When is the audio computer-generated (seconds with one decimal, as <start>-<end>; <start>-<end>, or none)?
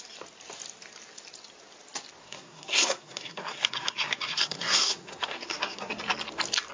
2.2-6.0